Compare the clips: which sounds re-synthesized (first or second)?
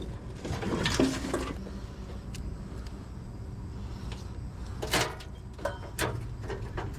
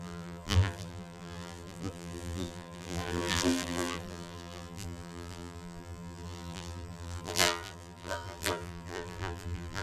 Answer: second